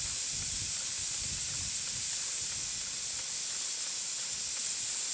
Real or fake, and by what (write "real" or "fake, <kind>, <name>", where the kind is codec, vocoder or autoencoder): real